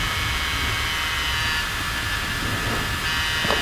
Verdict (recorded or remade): recorded